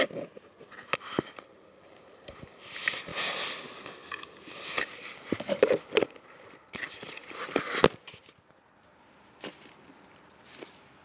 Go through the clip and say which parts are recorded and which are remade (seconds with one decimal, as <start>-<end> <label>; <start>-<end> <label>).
0.0-3.1 remade; 3.1-4.8 recorded; 4.8-11.0 remade